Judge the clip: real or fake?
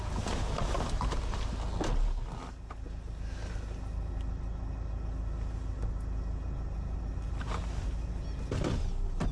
real